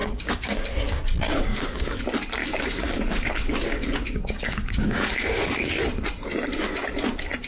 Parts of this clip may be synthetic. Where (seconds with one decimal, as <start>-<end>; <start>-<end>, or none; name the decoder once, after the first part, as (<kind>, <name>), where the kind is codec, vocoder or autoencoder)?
0.0-1.0 (codec, DAC); 1.5-2.0; 2.4-5.8